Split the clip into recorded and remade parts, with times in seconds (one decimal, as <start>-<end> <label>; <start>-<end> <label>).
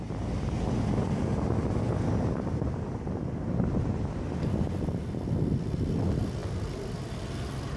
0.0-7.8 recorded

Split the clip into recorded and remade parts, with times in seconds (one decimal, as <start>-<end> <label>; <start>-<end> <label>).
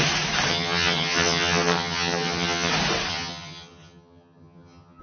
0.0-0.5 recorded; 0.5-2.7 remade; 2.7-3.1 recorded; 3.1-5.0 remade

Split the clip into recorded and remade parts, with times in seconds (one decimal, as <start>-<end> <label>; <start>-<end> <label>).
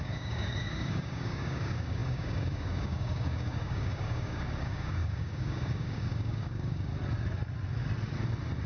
0.0-6.9 remade; 6.9-8.7 recorded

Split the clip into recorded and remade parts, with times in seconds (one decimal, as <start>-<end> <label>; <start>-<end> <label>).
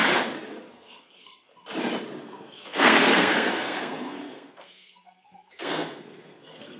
0.0-0.7 recorded; 0.7-1.5 remade; 1.5-2.2 recorded; 2.2-6.8 remade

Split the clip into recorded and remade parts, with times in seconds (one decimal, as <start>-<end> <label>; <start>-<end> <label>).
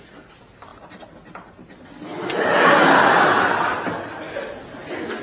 0.0-5.2 recorded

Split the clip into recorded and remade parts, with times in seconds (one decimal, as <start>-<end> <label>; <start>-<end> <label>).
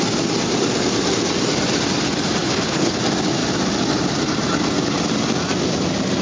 0.0-2.4 recorded; 2.4-3.0 remade; 3.0-6.2 recorded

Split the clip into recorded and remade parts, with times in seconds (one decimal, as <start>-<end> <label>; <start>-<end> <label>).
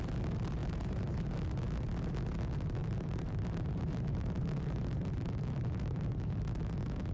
0.0-0.6 recorded; 0.6-1.2 remade; 1.2-2.8 recorded; 2.8-6.4 remade; 6.4-7.1 recorded